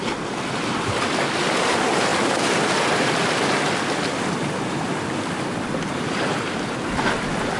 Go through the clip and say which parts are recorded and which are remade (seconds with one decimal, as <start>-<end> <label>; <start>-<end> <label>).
0.0-7.6 recorded